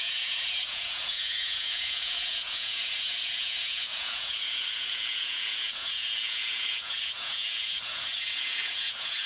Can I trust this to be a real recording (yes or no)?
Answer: no